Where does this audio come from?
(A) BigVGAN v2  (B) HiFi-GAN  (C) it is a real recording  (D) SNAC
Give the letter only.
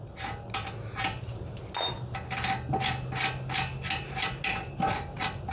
C